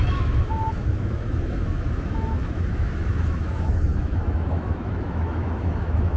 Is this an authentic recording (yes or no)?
no